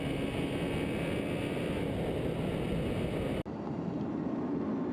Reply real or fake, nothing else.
real